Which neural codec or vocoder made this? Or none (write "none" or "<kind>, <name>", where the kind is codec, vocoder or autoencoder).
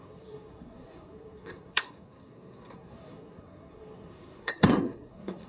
codec, SNAC